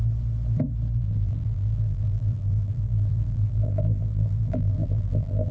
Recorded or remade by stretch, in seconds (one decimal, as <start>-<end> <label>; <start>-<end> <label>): 0.0-1.0 recorded; 1.0-5.5 remade